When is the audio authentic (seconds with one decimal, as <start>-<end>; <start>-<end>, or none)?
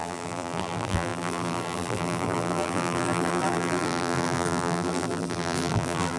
none